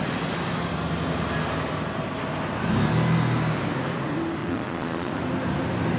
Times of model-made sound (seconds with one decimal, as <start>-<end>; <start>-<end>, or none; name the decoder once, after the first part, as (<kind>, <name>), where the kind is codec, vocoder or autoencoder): 4.4-5.1 (vocoder, Vocos)